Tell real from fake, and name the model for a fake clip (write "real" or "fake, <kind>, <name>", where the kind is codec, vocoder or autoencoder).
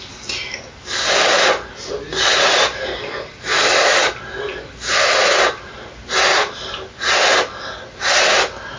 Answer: real